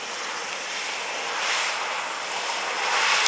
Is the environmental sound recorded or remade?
recorded